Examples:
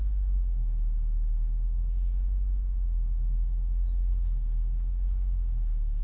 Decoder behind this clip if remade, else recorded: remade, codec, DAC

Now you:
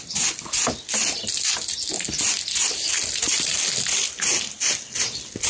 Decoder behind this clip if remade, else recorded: recorded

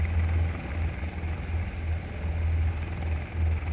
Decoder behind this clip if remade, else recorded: recorded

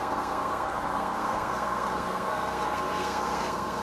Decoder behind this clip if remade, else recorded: remade, codec, SNAC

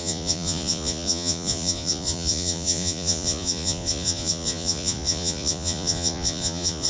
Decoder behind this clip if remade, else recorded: remade, vocoder, Vocos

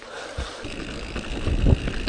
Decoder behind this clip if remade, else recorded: recorded